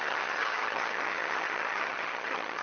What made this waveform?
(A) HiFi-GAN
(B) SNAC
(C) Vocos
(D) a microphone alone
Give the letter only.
A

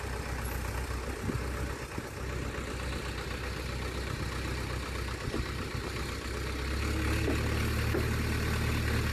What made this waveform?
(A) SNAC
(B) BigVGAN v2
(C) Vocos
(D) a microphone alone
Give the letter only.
D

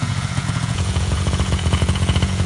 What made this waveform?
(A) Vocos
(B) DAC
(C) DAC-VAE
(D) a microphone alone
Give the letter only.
A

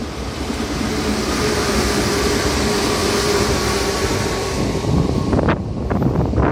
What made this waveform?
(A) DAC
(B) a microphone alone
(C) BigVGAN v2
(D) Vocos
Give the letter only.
B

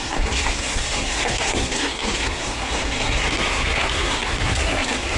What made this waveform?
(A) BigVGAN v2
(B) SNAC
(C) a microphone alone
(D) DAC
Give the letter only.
B